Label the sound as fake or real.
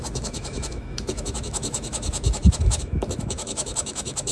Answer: fake